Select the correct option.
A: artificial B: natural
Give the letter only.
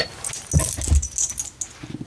B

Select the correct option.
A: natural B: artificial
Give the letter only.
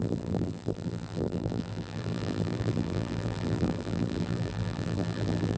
B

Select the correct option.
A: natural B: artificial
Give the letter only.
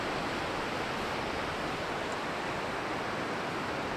A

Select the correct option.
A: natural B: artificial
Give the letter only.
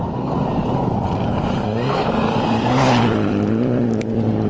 B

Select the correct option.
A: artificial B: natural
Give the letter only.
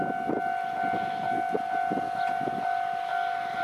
B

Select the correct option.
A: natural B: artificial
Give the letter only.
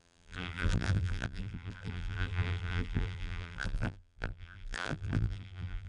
B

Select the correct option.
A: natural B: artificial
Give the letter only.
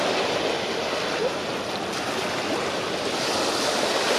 A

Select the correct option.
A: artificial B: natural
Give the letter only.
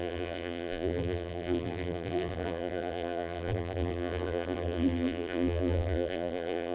A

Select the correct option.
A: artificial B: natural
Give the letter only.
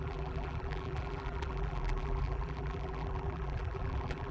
A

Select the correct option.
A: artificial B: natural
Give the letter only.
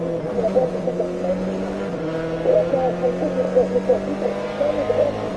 B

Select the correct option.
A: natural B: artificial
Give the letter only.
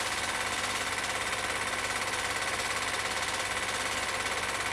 A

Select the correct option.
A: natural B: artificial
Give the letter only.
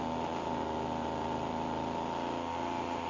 A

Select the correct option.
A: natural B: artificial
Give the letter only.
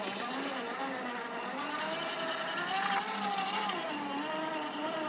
A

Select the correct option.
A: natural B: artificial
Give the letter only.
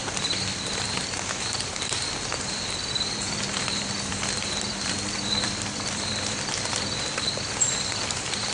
B